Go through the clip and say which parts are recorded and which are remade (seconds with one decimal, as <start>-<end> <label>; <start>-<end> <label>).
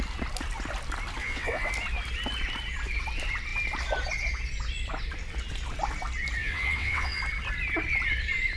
0.0-1.2 recorded; 1.2-1.7 remade; 1.7-6.4 recorded; 6.4-7.2 remade; 7.2-8.6 recorded